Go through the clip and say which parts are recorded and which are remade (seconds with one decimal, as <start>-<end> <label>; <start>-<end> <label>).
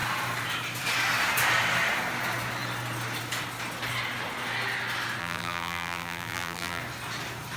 0.0-5.2 recorded; 5.2-6.8 remade; 6.8-7.6 recorded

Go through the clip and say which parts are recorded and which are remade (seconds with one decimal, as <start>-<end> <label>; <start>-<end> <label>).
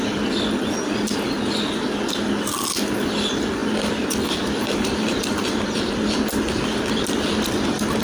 0.0-3.6 recorded; 3.6-5.9 remade; 5.9-8.0 recorded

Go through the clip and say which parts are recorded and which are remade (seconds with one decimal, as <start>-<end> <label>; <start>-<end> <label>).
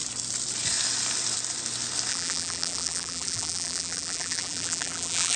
0.0-2.1 recorded; 2.1-5.4 remade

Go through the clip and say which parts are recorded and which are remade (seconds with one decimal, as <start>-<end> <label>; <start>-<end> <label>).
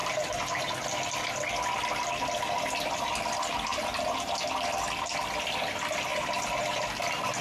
0.0-0.6 remade; 0.6-3.7 recorded; 3.7-4.3 remade; 4.3-7.4 recorded